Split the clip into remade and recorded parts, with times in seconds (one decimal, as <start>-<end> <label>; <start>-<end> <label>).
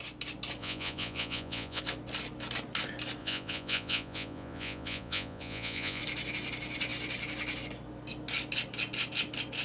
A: 0.0-0.6 recorded; 0.6-1.8 remade; 1.8-3.2 recorded; 3.2-6.0 remade; 6.0-9.6 recorded